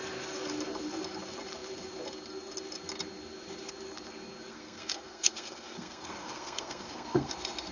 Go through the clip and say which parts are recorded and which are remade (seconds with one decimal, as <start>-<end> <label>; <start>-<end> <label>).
0.0-4.5 recorded; 4.5-7.3 remade; 7.3-7.7 recorded